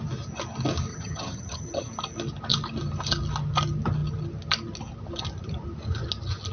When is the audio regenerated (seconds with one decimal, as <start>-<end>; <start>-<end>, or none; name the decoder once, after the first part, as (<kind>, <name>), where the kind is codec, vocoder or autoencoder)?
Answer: 0.9-1.9 (vocoder, HiFi-GAN)